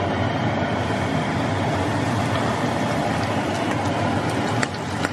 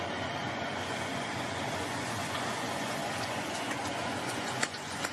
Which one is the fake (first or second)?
second